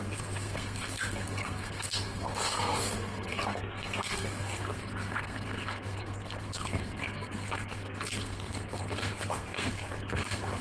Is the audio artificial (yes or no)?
yes